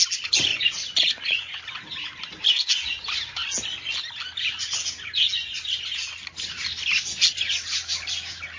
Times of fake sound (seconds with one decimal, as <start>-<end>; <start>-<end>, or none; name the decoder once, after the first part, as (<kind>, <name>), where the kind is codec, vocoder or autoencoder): 0.5-1.6 (vocoder, Vocos)